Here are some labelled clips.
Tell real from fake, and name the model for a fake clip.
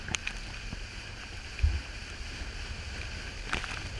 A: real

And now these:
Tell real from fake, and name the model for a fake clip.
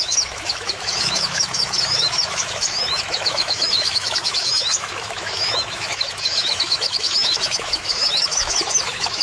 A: fake, autoencoder, DAC-VAE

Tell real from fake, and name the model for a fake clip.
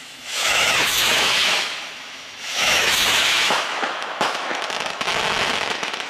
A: fake, autoencoder, DAC-VAE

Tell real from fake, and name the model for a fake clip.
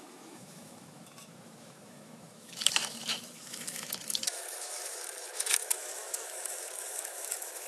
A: fake, autoencoder, DAC-VAE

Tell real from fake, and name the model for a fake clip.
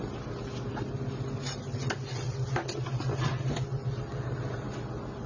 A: real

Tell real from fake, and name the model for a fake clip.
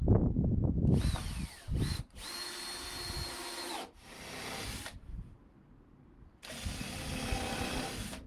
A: real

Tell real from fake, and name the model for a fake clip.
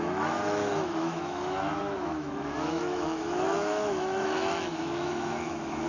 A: fake, autoencoder, DAC-VAE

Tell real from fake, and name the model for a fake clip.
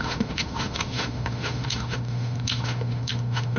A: fake, autoencoder, DAC-VAE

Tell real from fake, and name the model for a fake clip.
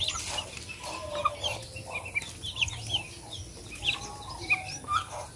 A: real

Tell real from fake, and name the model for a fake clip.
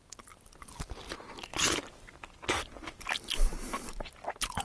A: real